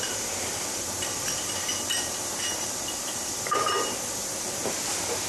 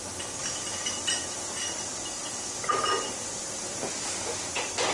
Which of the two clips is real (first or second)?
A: second